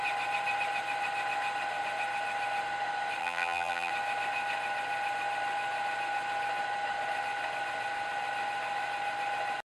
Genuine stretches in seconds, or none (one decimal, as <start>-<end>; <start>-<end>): 0.0-3.2; 3.9-9.7